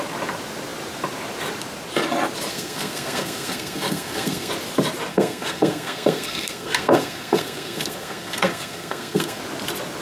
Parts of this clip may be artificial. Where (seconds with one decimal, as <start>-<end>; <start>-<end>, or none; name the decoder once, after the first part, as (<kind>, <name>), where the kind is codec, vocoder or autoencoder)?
2.5-4.5 (codec, SNAC); 5.1-9.4